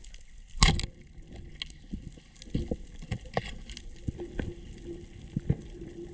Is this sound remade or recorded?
recorded